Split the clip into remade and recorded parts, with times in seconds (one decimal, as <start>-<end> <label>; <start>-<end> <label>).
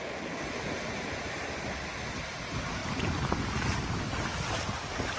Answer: 0.0-5.2 recorded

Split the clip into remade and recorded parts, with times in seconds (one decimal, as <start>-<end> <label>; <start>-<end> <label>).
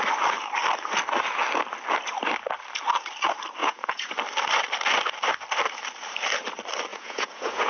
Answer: 0.0-3.6 recorded; 3.6-4.1 remade; 4.1-6.9 recorded; 6.9-7.7 remade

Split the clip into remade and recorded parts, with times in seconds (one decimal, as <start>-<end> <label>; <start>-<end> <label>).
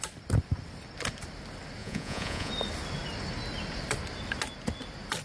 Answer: 0.0-1.8 recorded; 1.8-2.5 remade; 2.5-5.2 recorded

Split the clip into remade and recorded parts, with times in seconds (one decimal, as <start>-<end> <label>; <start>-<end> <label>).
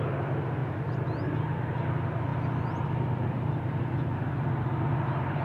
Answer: 0.0-5.4 recorded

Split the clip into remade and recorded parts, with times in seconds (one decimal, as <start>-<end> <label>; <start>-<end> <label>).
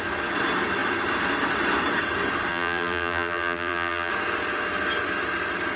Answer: 0.0-2.5 recorded; 2.5-4.1 remade; 4.1-5.8 recorded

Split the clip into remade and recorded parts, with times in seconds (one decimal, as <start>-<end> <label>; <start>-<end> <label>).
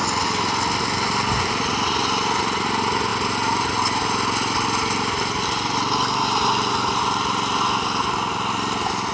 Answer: 0.0-9.1 recorded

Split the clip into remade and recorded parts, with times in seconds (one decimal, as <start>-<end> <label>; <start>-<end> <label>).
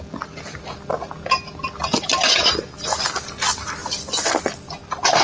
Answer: 0.0-5.2 recorded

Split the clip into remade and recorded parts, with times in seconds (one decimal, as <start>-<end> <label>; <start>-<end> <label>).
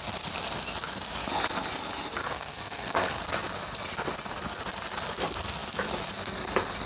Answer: 0.0-2.2 recorded; 2.2-3.2 remade; 3.2-6.9 recorded